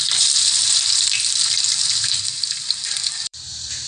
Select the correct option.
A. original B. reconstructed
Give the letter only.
B